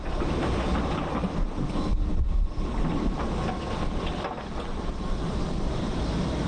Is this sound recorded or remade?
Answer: recorded